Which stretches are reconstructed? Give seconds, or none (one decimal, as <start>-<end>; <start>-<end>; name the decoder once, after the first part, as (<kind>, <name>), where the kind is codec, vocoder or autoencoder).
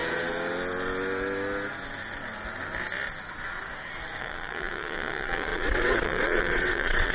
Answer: 4.2-7.1 (vocoder, WaveNeXt)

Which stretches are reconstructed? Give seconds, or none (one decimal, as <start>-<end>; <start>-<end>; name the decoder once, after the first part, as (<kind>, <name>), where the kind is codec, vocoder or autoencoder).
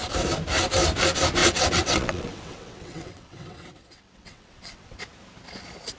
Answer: 1.4-5.0 (vocoder, WaveNeXt)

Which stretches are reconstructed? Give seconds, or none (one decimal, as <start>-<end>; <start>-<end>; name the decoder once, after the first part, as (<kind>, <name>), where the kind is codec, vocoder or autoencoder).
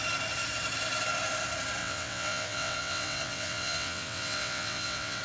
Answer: 1.8-5.2 (vocoder, WaveNeXt)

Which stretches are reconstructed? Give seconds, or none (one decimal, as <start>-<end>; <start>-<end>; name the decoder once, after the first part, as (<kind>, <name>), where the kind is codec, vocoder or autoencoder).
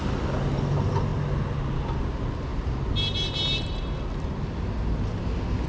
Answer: none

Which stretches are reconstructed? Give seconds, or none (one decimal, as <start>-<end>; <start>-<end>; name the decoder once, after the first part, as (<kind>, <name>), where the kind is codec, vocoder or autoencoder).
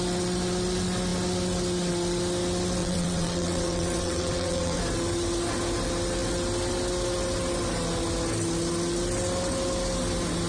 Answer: 2.8-4.8 (vocoder, WaveNeXt)